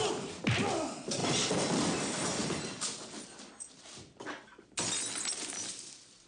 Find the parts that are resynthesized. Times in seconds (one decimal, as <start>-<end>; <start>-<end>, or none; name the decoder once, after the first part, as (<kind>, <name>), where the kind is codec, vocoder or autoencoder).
none